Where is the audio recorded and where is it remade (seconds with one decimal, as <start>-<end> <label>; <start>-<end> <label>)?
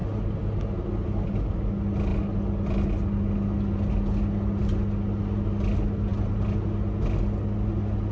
0.0-8.1 recorded